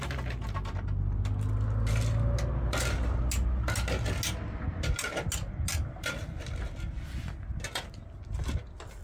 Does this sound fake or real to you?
real